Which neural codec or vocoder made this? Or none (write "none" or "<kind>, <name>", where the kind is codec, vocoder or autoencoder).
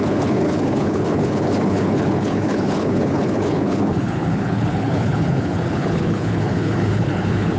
codec, HILCodec